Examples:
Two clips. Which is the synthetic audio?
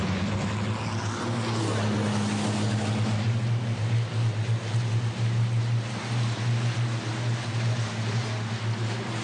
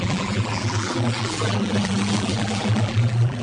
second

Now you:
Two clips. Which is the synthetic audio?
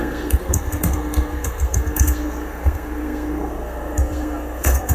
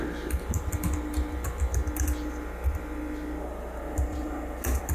first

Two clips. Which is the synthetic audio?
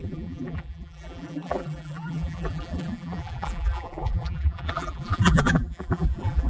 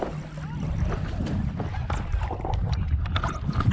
first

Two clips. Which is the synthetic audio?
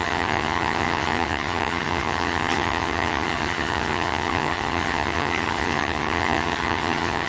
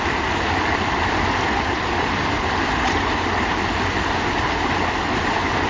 first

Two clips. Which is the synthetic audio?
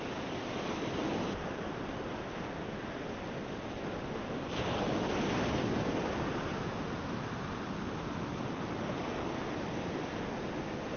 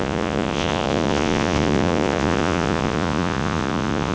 second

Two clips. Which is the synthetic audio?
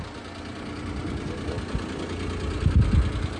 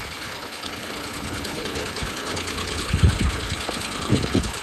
second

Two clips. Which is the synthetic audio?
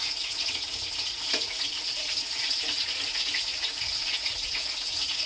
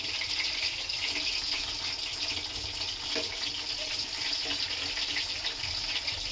first